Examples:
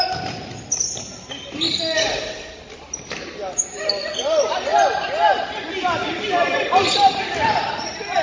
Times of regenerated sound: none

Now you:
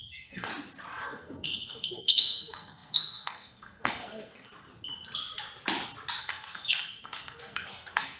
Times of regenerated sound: 0.0-0.5 (codec, SNAC); 1.0-4.5; 6.2-8.2